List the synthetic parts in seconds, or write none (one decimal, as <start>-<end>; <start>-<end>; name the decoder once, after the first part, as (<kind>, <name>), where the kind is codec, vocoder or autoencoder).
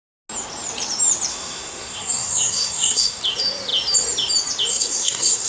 1.3-3.2 (codec, SNAC); 4.7-5.5